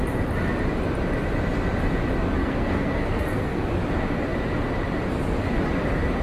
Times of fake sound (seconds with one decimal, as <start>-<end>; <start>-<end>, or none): 2.4-3.7